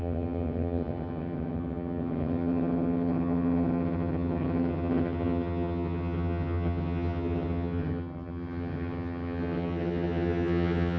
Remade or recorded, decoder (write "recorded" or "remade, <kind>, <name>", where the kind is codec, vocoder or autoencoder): remade, vocoder, HiFi-GAN